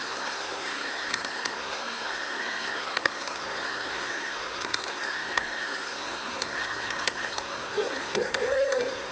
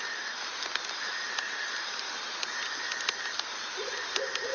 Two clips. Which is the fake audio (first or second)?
first